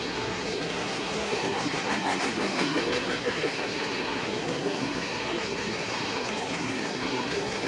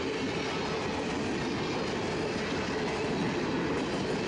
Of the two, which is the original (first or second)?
second